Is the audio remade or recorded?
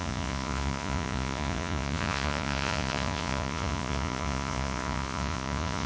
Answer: remade